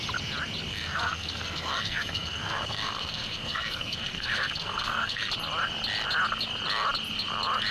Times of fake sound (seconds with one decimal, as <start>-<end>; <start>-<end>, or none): 0.7-5.3